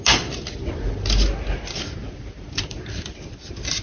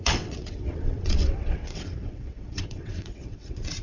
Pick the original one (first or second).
first